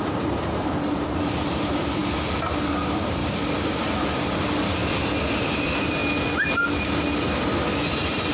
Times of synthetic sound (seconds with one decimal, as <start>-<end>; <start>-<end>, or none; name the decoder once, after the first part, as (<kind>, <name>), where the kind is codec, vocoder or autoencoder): 0.0-2.0 (vocoder, BigVGAN v2); 2.6-4.8; 5.4-6.0